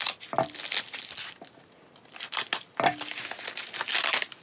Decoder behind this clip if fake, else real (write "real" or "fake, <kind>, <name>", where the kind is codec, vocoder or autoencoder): real